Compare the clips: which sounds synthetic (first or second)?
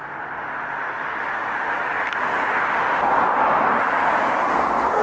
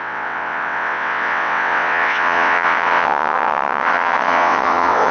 second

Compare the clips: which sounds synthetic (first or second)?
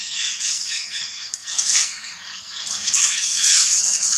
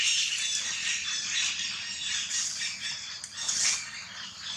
first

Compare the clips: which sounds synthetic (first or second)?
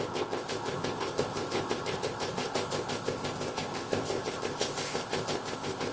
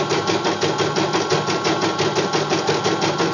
first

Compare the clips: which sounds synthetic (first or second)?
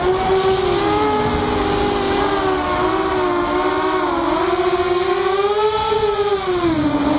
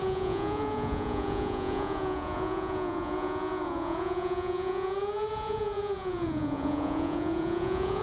second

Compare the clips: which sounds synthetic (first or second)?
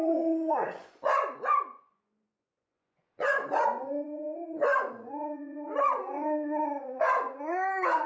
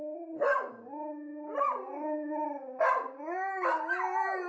first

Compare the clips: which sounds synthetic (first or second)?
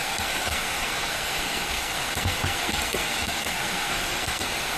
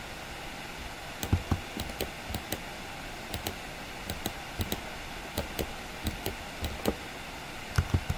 first